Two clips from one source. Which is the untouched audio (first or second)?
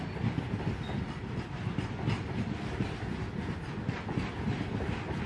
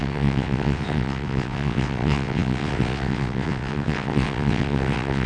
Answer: first